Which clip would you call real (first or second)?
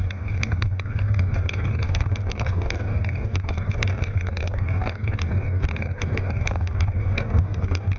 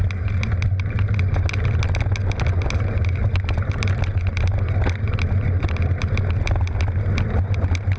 second